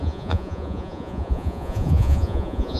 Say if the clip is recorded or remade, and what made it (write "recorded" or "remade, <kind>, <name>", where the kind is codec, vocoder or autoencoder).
remade, vocoder, Vocos